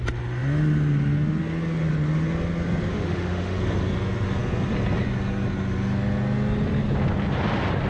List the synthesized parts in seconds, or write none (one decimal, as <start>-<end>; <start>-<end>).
2.9-3.6